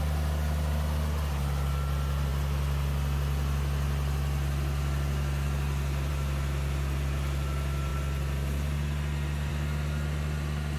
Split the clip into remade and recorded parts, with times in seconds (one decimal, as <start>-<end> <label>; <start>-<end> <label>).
0.0-10.8 recorded